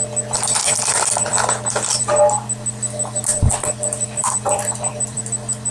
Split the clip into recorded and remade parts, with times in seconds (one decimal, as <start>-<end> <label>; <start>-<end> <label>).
0.0-0.6 recorded; 0.6-1.3 remade; 1.3-3.3 recorded; 3.3-5.2 remade; 5.2-5.7 recorded